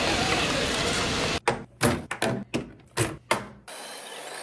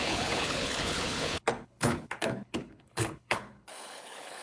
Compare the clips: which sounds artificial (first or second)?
second